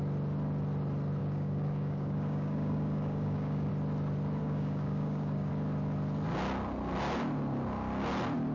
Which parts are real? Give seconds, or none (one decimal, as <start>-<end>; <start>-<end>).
0.0-1.2; 3.7-4.4; 5.5-8.5